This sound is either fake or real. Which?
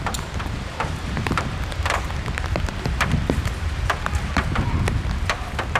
real